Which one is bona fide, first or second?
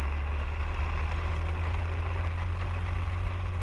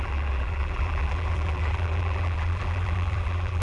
first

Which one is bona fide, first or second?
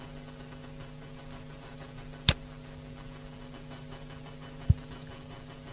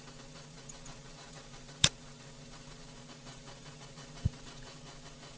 first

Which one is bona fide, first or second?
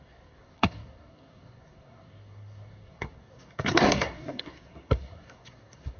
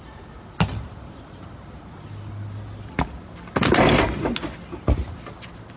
second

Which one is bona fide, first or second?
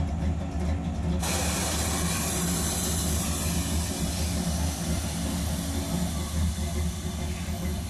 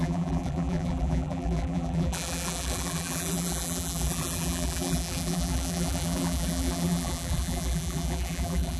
first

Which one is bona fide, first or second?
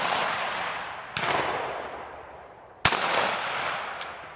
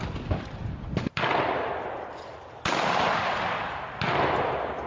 first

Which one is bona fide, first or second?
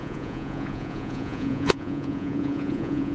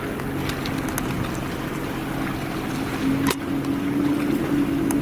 second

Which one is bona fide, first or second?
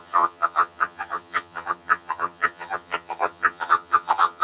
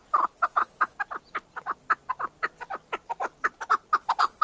second